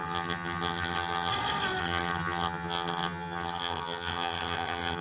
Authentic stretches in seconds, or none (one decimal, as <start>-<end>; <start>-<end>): 1.3-1.8